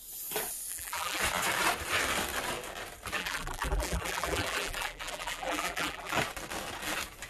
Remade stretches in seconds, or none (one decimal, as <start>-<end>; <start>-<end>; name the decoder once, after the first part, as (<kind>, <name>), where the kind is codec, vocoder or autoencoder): 0.7-1.2 (vocoder, BigVGAN v2); 3.2-6.1